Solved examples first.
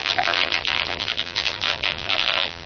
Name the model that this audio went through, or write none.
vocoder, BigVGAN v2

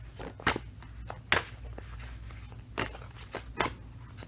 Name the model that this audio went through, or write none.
none